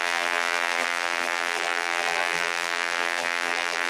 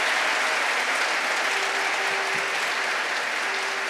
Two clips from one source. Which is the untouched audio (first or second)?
second